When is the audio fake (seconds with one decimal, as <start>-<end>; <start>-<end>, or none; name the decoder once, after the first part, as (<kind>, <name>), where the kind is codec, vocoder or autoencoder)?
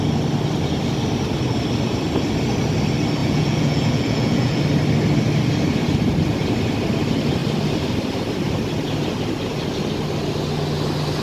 3.2-4.6 (vocoder, Vocos)